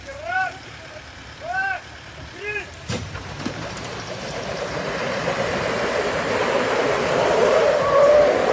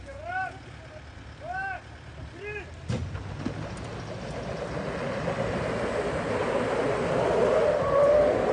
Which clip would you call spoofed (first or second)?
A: first